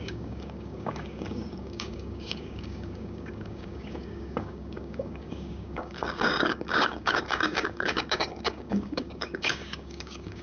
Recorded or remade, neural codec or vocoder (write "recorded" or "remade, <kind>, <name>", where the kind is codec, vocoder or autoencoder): remade, codec, DAC